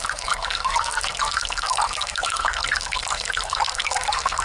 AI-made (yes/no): yes